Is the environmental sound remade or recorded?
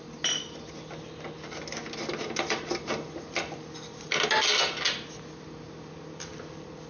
recorded